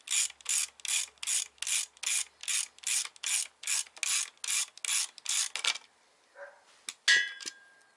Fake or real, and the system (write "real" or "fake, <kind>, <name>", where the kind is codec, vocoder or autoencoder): real